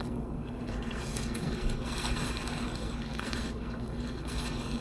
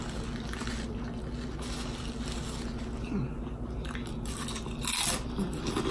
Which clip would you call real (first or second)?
second